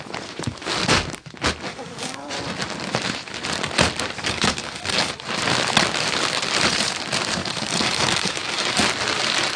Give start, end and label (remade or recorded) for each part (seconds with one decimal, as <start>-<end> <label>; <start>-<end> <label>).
0.0-1.7 recorded; 1.7-2.3 remade; 2.3-4.2 recorded; 4.2-5.1 remade; 5.1-7.4 recorded; 7.4-8.8 remade; 8.8-9.6 recorded